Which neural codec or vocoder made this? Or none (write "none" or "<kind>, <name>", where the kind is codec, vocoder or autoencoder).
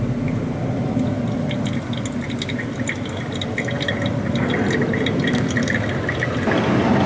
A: none